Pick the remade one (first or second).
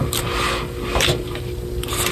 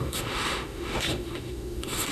second